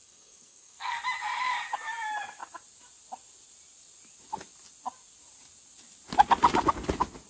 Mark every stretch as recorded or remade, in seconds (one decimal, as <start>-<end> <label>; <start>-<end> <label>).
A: 0.0-1.0 remade; 1.0-7.3 recorded